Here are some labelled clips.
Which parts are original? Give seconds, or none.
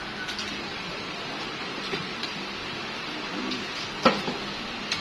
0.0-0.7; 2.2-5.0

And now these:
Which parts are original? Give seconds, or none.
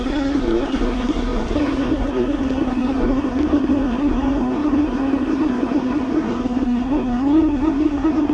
none